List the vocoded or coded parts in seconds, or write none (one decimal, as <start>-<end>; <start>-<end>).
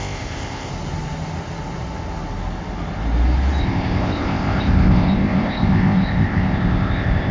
0.0-0.7; 3.6-7.3